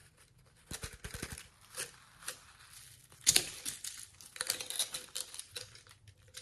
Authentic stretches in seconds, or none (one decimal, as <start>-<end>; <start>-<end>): 0.0-6.4